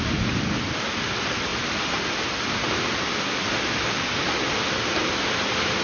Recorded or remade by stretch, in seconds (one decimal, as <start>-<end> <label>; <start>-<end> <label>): 0.0-5.8 recorded